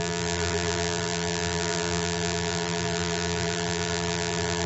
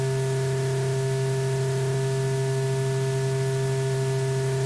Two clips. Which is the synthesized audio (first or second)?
first